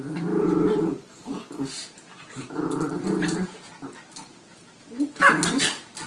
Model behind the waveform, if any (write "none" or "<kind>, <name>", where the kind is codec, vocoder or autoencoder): none